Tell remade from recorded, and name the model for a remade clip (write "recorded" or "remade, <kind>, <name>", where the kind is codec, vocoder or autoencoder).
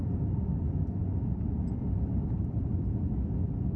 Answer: recorded